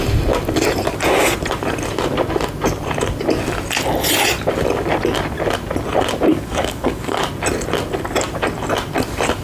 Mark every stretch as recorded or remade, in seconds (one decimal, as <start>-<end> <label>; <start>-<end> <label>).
0.0-6.3 recorded; 6.3-7.3 remade; 7.3-9.4 recorded